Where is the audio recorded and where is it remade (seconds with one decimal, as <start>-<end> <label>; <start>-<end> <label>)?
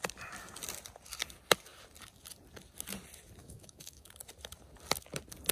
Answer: 0.0-3.4 recorded; 3.4-4.1 remade; 4.1-5.5 recorded